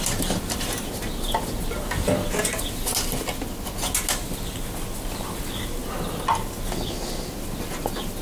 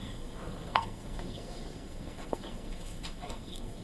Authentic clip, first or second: first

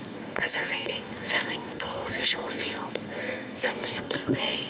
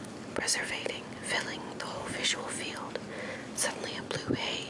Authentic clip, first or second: second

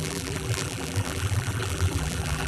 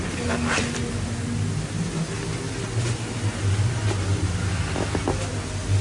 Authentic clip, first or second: second